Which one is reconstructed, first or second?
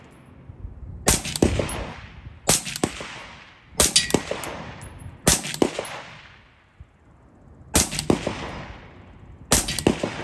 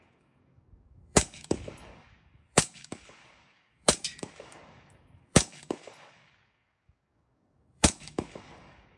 second